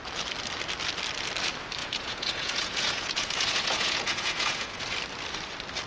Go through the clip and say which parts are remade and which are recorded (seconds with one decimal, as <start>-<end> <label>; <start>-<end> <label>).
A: 0.0-1.8 recorded; 1.8-4.8 remade; 4.8-5.9 recorded